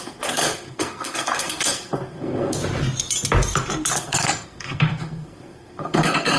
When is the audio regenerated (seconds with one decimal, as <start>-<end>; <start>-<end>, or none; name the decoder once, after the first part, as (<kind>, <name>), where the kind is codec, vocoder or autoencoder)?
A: 0.0-2.6 (codec, SNAC); 3.9-6.4